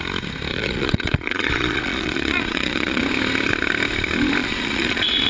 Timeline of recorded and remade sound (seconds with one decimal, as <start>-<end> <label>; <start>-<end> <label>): 0.0-0.5 recorded; 0.5-3.0 remade; 3.0-4.4 recorded; 4.4-5.3 remade